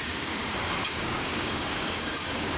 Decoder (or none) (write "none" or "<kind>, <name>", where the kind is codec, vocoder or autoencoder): codec, DAC